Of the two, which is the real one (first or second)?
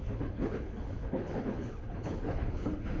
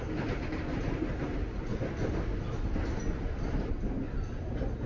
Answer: second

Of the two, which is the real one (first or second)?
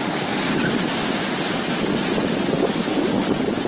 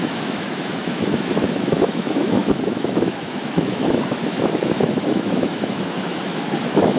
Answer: first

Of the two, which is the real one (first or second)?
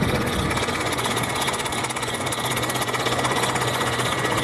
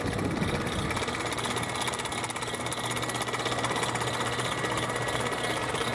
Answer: second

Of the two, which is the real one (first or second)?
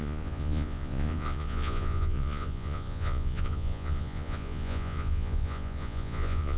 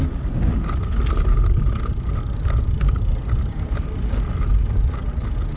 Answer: second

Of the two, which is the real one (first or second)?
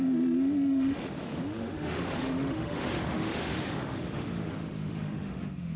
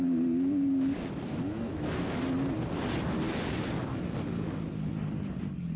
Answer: second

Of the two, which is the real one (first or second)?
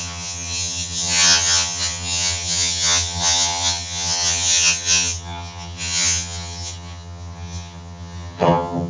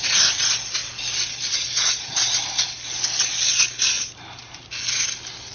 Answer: second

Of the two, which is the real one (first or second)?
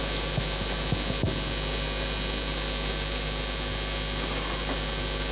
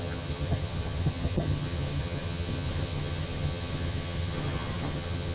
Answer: first